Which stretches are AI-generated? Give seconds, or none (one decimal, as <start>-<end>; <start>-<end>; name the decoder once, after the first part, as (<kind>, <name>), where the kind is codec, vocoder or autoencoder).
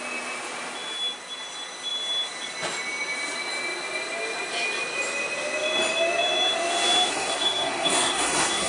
7.1-8.7 (codec, SNAC)